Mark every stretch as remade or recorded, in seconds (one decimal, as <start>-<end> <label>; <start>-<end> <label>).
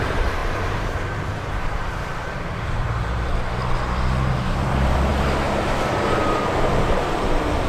0.0-3.6 remade; 3.6-4.3 recorded; 4.3-5.1 remade; 5.1-6.8 recorded; 6.8-7.7 remade